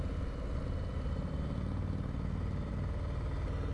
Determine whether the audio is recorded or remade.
recorded